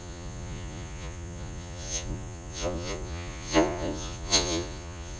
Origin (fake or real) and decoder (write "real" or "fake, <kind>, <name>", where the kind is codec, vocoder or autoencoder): fake, vocoder, Vocos